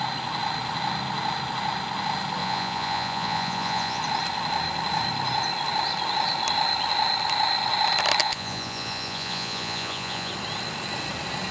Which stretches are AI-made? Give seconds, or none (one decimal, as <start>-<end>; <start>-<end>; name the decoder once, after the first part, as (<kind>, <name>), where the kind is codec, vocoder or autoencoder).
2.4-4.0 (vocoder, Vocos); 8.2-10.3